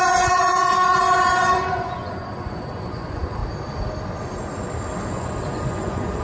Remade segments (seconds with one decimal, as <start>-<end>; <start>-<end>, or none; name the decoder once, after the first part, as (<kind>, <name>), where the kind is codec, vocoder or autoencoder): 0.0-3.4 (vocoder, Vocos); 5.1-6.2